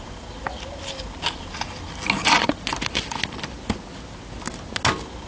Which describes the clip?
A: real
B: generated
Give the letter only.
A